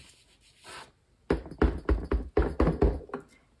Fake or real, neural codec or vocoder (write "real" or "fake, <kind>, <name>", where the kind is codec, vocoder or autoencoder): real